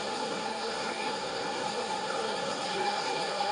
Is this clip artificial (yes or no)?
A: yes